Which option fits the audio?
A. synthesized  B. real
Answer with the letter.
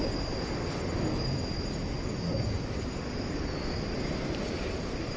B